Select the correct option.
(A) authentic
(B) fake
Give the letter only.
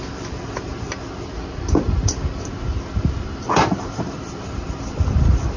A